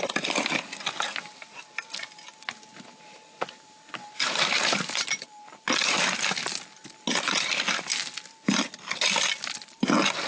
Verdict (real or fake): real